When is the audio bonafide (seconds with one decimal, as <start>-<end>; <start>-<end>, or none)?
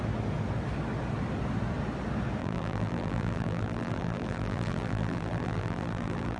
0.0-2.4